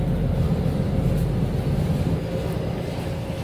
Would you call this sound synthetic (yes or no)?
no